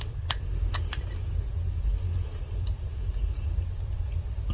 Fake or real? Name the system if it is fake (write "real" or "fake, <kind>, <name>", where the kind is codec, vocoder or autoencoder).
real